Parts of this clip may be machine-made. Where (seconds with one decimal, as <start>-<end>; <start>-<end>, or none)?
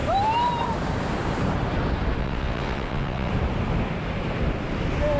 2.2-3.3